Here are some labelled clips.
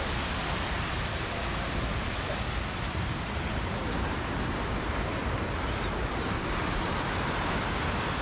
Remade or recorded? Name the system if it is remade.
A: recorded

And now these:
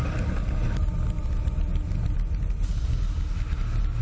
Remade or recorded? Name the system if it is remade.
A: recorded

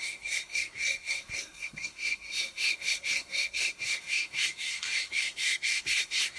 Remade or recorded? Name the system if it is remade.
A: remade, codec, SNAC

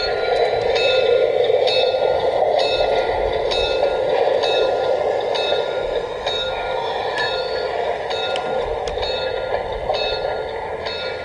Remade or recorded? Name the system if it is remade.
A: recorded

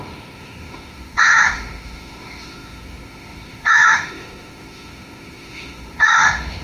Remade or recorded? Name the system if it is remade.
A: remade, autoencoder, DAC-VAE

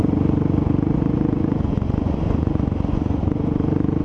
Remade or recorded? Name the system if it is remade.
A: remade, vocoder, Vocos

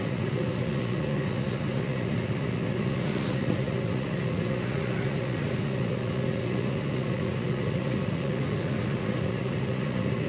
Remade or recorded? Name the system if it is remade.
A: remade, vocoder, Vocos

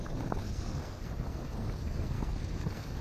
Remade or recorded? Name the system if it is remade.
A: remade, codec, SNAC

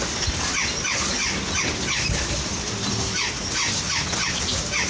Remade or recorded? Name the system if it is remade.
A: recorded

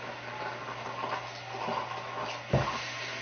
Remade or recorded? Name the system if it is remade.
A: recorded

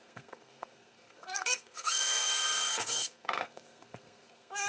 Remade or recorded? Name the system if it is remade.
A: remade, codec, SNAC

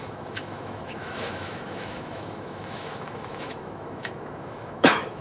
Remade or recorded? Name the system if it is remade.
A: remade, autoencoder, DAC-VAE